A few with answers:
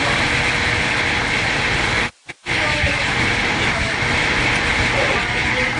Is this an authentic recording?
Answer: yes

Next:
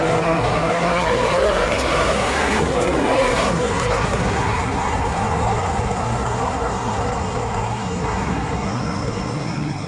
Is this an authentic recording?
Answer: no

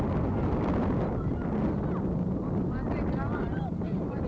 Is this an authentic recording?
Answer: yes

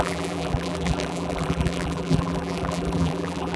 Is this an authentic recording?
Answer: no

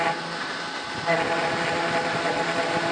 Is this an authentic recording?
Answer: yes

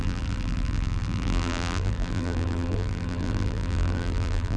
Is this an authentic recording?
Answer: no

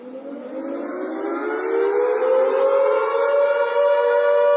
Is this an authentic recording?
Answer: yes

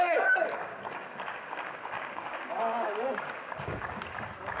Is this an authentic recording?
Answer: no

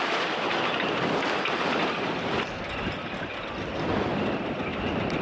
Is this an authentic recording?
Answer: no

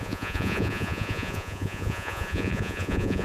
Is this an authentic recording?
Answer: no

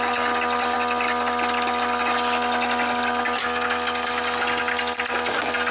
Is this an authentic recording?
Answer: yes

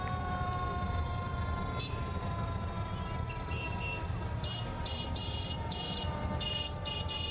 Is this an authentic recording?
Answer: no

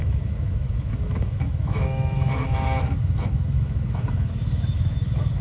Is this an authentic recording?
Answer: no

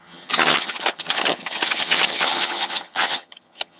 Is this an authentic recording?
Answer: no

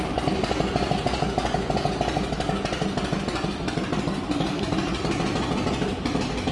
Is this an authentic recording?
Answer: yes